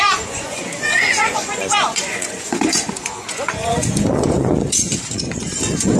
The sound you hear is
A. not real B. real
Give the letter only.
A